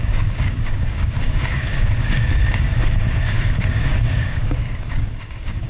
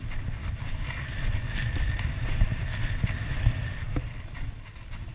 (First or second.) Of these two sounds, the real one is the second